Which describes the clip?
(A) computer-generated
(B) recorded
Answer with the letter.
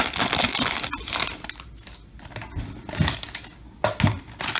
B